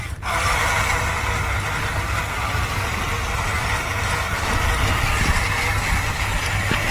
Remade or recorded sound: recorded